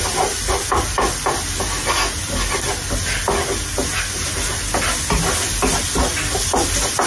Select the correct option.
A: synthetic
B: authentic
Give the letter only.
B